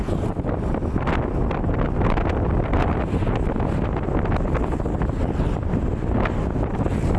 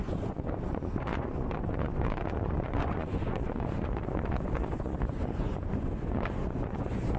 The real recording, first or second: first